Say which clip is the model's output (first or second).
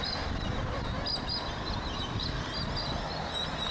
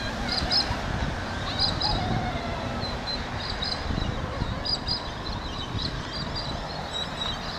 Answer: second